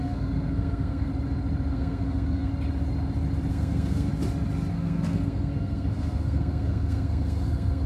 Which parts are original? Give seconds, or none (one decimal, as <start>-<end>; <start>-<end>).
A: 1.1-1.7; 2.5-3.5; 4.1-4.7